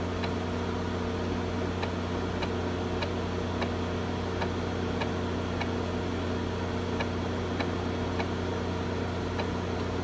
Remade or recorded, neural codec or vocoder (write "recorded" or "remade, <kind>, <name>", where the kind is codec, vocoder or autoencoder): recorded